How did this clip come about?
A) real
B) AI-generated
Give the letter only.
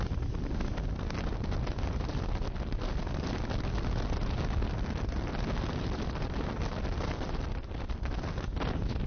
A